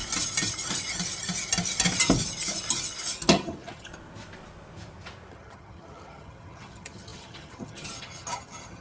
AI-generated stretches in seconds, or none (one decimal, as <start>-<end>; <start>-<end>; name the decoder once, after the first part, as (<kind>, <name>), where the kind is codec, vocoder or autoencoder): 3.3-3.9 (vocoder, HiFi-GAN); 5.3-8.8